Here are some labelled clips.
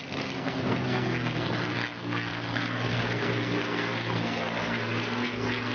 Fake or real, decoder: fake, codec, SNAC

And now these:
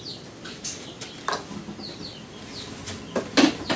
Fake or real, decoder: real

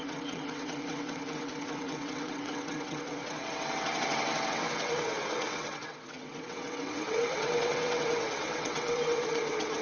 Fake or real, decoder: fake, vocoder, WaveNeXt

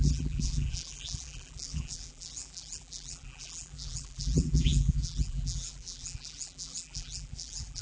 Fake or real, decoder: fake, vocoder, BigVGAN v2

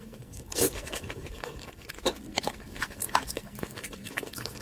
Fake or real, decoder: fake, codec, SNAC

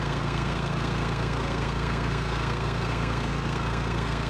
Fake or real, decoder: fake, codec, SNAC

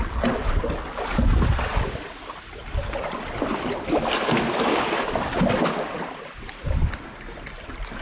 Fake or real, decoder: real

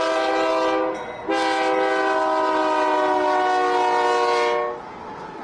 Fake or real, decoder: real